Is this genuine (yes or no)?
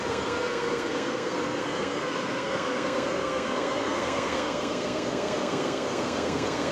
no